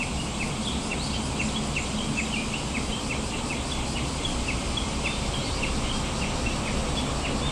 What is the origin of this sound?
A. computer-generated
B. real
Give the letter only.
B